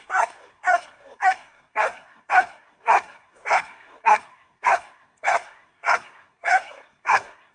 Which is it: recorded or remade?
remade